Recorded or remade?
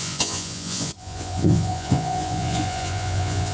remade